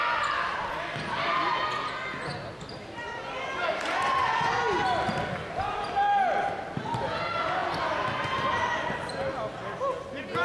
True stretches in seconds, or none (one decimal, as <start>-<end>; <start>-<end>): 0.0-10.4